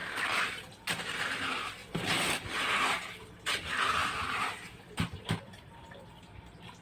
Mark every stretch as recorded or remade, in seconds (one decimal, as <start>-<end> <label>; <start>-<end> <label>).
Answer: 0.0-1.8 recorded; 1.8-2.5 remade; 2.5-4.0 recorded; 4.0-6.0 remade; 6.0-6.8 recorded